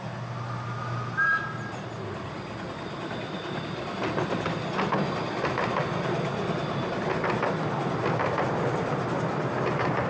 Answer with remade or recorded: recorded